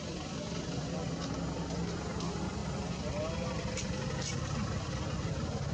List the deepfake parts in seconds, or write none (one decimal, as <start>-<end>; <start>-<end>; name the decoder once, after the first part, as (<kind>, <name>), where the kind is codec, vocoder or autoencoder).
none